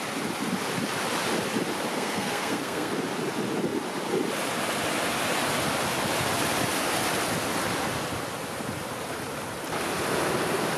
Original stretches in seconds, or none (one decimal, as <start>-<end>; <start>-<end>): 0.0-1.9; 2.9-10.8